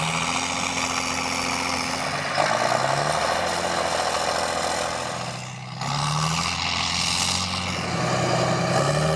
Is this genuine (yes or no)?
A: yes